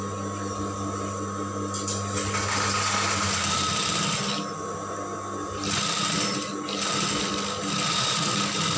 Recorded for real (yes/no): yes